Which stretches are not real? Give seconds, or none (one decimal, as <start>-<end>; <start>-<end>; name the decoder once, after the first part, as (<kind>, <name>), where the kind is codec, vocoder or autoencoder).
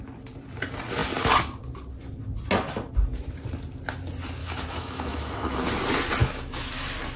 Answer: 4.4-5.7 (autoencoder, DAC-VAE); 6.2-6.7